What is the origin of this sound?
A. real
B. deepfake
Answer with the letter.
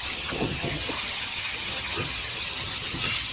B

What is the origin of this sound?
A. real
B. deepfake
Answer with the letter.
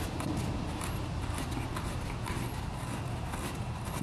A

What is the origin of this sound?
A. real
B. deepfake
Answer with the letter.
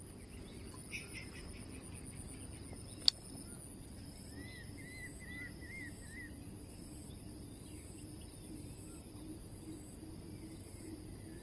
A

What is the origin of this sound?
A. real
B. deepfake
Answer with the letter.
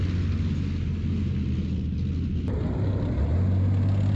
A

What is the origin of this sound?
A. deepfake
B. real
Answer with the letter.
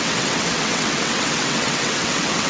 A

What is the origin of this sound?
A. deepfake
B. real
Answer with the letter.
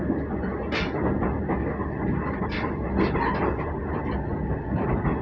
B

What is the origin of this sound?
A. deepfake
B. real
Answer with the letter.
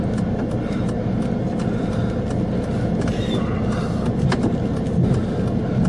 B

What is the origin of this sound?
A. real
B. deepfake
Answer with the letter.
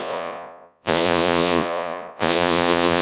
B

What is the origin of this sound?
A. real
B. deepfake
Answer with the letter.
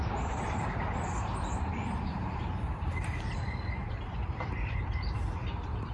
B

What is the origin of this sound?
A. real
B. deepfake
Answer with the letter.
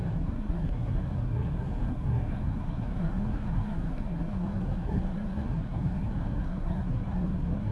B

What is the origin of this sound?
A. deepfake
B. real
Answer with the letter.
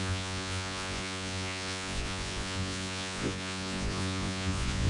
A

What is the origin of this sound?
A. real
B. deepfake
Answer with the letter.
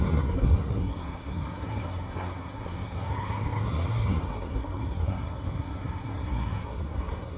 B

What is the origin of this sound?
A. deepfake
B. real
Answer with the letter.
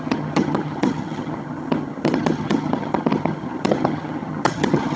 A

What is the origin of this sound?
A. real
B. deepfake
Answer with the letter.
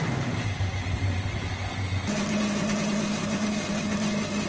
A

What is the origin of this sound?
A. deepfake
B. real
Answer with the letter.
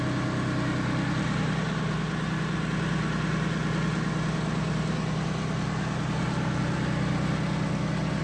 B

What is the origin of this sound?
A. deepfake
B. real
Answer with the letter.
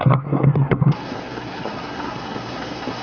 A